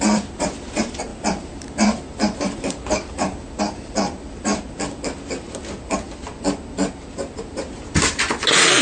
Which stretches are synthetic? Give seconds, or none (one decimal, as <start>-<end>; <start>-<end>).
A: 0.0-4.5; 6.9-8.8